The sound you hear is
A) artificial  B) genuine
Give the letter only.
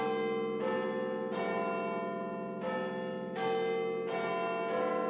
B